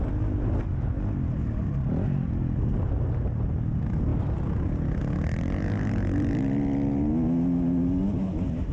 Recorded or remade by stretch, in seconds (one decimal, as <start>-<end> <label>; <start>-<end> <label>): 0.0-8.7 recorded